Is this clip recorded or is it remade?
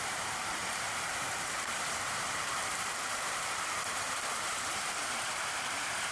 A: remade